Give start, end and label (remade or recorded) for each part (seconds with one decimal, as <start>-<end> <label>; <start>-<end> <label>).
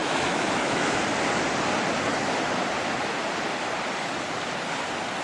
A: 0.0-1.0 remade; 1.0-5.2 recorded